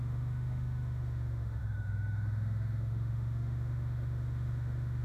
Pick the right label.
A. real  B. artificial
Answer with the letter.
B